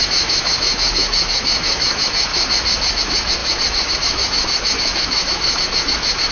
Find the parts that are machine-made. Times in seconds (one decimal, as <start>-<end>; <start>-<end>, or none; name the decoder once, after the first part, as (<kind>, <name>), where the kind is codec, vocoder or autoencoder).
0.0-2.3 (autoencoder, DAC-VAE); 3.0-6.3